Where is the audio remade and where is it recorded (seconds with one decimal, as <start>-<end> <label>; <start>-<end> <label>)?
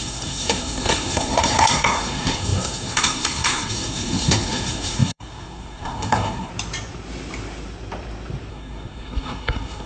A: 0.0-6.5 remade; 6.5-8.5 recorded; 8.5-9.9 remade